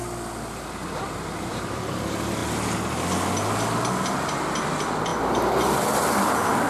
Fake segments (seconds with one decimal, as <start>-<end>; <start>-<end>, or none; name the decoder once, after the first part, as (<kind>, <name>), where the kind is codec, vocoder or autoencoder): none